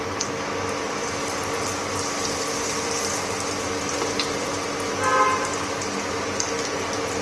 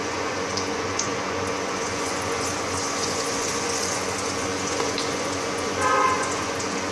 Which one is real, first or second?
first